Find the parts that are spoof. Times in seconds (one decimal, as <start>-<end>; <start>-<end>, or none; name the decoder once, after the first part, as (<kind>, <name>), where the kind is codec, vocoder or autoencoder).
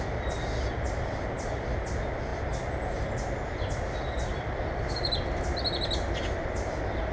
none